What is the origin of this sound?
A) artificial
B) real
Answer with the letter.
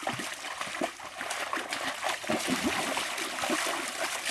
B